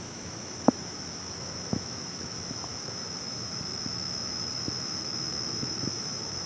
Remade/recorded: remade